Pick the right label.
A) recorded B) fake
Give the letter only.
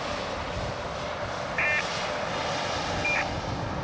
A